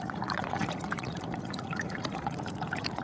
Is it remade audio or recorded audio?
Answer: remade